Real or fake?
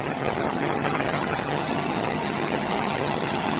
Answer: fake